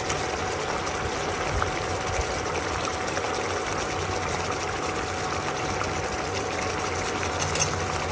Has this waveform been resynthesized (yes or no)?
no